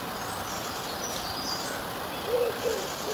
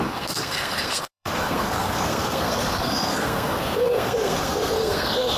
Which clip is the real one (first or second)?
first